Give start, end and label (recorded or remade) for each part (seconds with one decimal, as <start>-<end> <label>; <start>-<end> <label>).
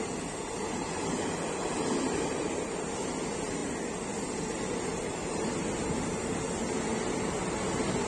0.0-3.6 recorded; 3.6-5.5 remade; 5.5-8.1 recorded